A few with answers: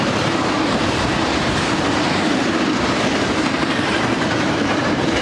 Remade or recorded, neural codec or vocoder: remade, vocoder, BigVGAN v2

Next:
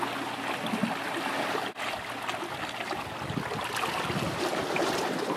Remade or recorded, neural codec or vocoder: recorded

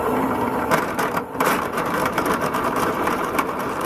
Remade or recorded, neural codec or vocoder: remade, vocoder, BigVGAN v2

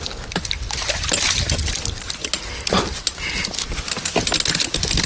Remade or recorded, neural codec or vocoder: recorded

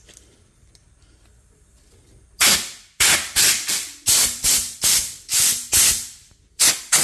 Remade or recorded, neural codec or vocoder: remade, vocoder, BigVGAN v2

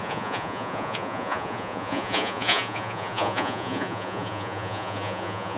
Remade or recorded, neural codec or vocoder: remade, vocoder, Vocos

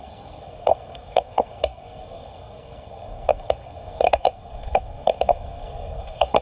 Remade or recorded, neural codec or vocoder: remade, codec, SNAC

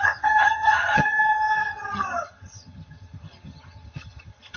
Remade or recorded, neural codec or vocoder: remade, vocoder, HiFi-GAN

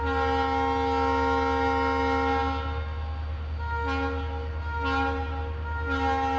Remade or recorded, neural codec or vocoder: recorded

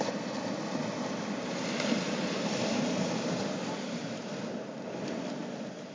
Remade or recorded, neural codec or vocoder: recorded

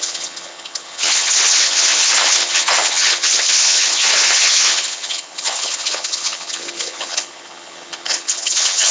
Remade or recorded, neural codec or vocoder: remade, vocoder, HiFi-GAN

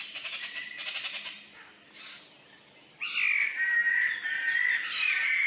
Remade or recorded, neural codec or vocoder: recorded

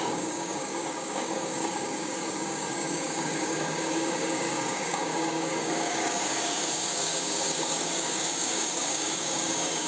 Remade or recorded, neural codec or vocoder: remade, codec, DAC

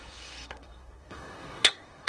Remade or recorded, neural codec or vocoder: remade, codec, SNAC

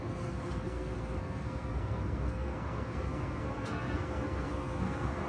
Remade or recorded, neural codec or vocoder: remade, codec, SNAC